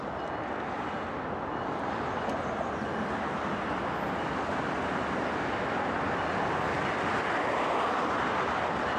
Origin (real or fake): real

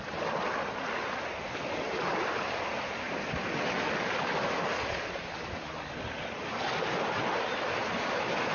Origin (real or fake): real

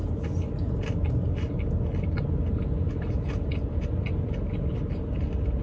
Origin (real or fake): real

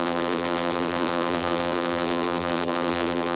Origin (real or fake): fake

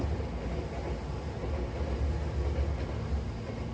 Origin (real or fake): real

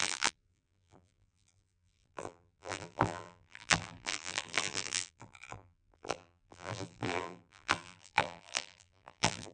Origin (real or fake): fake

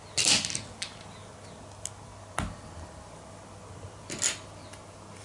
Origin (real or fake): real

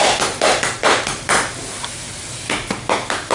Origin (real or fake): real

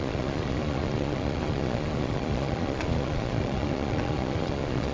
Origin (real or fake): fake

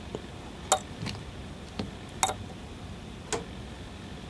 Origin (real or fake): real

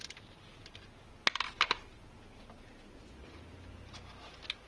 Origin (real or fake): real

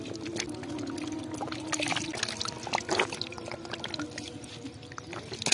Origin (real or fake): real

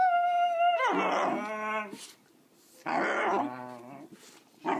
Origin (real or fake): real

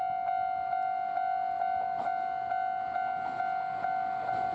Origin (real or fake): real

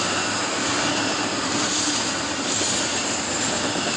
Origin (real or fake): real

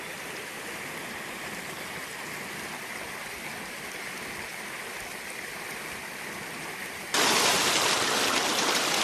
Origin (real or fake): real